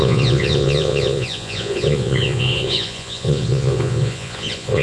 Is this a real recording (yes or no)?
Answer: no